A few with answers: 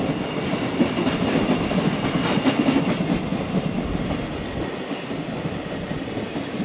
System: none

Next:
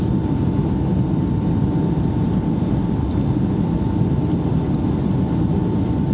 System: none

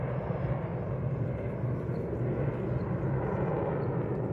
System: none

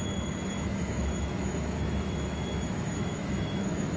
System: autoencoder, DAC-VAE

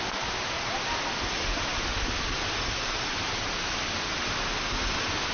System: none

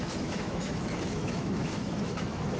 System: autoencoder, DAC-VAE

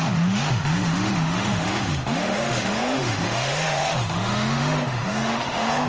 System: autoencoder, DAC-VAE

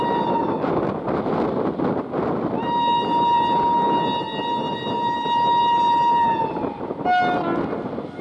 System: none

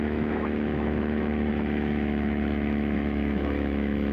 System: autoencoder, DAC-VAE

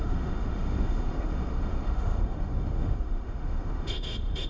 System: autoencoder, DAC-VAE